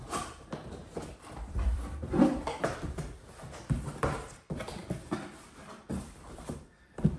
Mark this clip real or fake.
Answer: fake